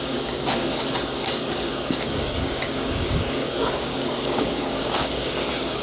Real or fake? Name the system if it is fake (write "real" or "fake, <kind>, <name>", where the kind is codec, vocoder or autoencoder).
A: fake, codec, DAC